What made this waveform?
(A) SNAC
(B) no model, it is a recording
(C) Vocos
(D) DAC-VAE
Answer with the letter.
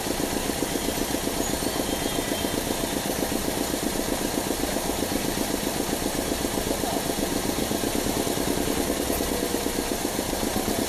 B